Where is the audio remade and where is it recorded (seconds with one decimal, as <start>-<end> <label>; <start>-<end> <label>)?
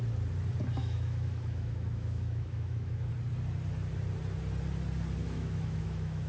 0.0-0.8 recorded; 0.8-3.1 remade; 3.1-5.2 recorded; 5.2-6.3 remade